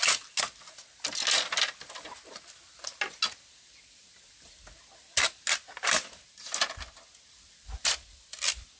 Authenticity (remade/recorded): recorded